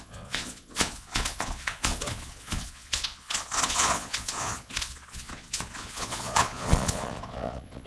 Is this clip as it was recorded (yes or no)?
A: no